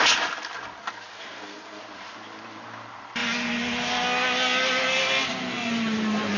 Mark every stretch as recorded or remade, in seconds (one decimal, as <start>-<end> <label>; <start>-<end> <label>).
0.0-1.1 recorded; 1.1-1.8 remade; 1.8-6.4 recorded